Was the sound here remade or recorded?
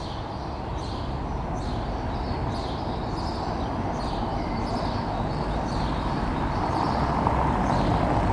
recorded